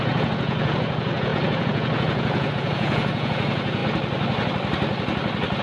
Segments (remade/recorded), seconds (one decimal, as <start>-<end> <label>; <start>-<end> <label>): 0.0-3.8 remade; 3.8-5.6 recorded